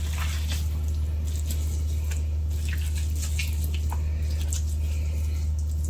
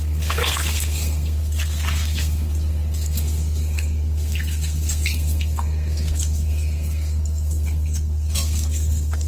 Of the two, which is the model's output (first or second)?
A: second